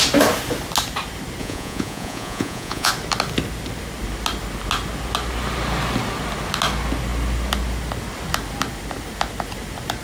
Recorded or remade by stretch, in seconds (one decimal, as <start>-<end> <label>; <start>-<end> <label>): 0.0-1.4 recorded; 1.4-2.9 remade; 2.9-10.0 recorded